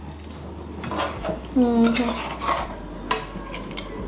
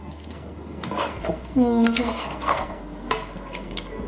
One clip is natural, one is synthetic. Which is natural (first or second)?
first